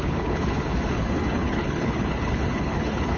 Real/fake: fake